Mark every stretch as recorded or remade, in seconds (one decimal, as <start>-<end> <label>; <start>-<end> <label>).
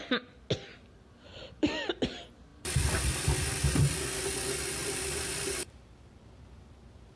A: 0.0-0.7 recorded; 0.7-2.0 remade; 2.0-2.5 recorded; 2.5-3.5 remade; 3.5-4.8 recorded; 4.8-7.2 remade